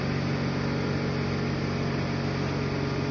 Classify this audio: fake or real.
real